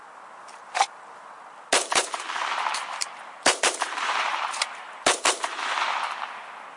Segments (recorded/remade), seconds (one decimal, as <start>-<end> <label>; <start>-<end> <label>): 0.0-1.9 recorded; 1.9-6.0 remade; 6.0-6.8 recorded

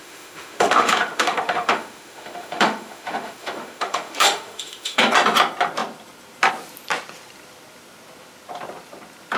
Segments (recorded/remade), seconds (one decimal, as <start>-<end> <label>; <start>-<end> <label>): 0.0-5.0 remade; 5.0-9.4 recorded

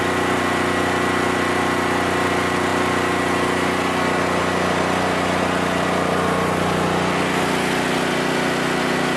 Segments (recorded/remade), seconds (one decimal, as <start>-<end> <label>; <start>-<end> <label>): 0.0-9.2 recorded

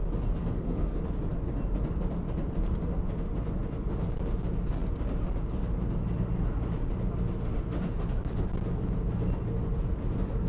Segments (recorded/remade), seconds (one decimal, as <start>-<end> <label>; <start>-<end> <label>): 0.0-0.4 recorded; 0.4-1.0 remade; 1.0-10.5 recorded

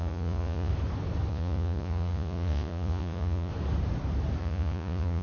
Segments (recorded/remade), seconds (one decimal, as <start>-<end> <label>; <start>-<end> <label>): 0.0-0.7 remade; 0.7-1.3 recorded; 1.3-3.5 remade; 3.5-4.4 recorded; 4.4-5.2 remade

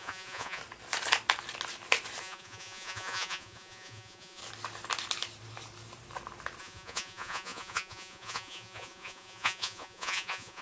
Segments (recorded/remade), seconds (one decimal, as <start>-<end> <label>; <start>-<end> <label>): 0.0-0.6 remade; 0.6-2.2 recorded; 2.2-4.4 remade; 4.4-6.6 recorded; 6.6-10.6 remade